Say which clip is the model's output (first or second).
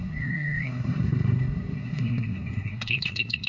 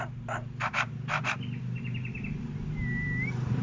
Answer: first